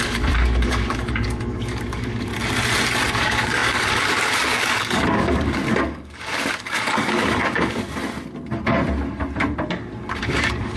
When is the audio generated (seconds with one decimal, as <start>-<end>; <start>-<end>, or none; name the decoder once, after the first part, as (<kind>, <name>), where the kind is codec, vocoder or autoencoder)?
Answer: 0.0-2.3 (codec, DAC); 3.1-7.9; 10.2-10.8